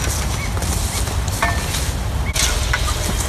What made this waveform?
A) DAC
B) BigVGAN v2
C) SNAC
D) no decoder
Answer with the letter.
D